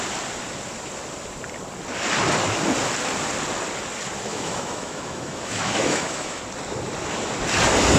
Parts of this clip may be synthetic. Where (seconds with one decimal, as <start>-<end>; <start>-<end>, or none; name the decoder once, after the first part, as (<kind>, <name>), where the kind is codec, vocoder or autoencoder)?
4.3-6.4 (autoencoder, DAC-VAE)